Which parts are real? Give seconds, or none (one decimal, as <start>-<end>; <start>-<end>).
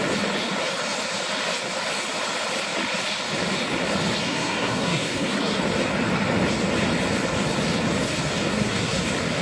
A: 0.0-4.2; 5.6-8.5; 9.0-9.4